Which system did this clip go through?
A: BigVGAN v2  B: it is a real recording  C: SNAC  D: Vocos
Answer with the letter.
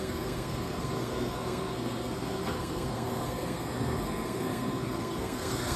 C